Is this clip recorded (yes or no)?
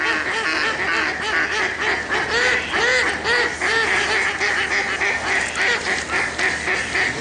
yes